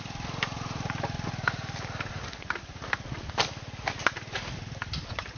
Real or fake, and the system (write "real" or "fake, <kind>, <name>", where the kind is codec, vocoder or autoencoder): real